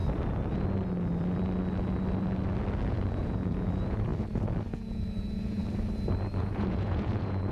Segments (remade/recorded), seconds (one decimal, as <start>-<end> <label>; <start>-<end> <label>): 0.0-2.9 recorded; 2.9-4.1 remade; 4.1-4.7 recorded; 4.7-5.6 remade; 5.6-6.4 recorded; 6.4-7.5 remade